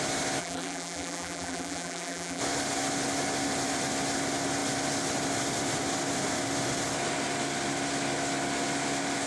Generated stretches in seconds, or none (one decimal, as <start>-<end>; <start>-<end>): 0.4-2.4